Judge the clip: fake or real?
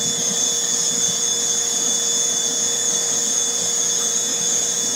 fake